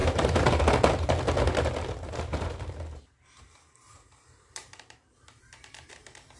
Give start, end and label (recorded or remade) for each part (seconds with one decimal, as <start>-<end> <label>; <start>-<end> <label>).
0.0-0.6 remade; 0.6-2.3 recorded; 2.3-5.9 remade; 5.9-6.4 recorded